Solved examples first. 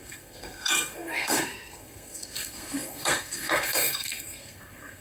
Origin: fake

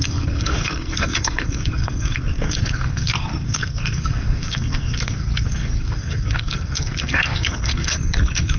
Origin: fake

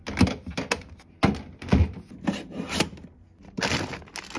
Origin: real